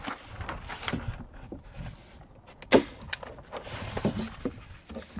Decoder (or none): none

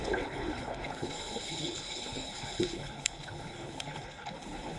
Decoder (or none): codec, HILCodec